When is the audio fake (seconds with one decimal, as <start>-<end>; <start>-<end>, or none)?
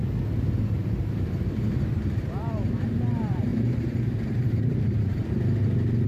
0.6-5.2